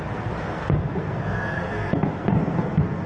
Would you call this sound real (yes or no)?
no